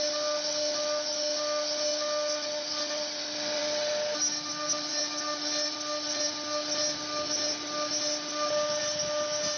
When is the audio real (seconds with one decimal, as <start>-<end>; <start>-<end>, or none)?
0.0-9.6